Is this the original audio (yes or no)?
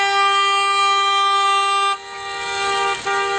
yes